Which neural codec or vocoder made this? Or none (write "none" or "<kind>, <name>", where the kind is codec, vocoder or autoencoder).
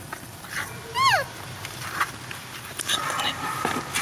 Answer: none